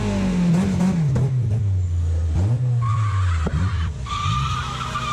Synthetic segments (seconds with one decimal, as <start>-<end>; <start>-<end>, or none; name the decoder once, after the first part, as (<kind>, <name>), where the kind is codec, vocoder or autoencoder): 2.9-4.1 (vocoder, BigVGAN v2)